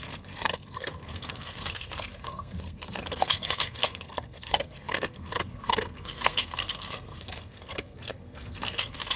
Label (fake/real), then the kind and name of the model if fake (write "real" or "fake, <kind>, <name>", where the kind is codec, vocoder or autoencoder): fake, codec, SNAC